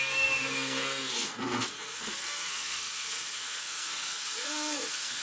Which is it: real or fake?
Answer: fake